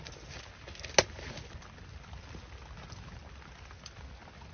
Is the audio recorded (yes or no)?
yes